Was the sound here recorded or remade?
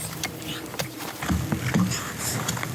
recorded